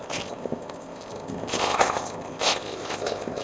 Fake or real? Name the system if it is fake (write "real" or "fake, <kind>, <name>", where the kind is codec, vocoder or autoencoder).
fake, codec, ZipCodec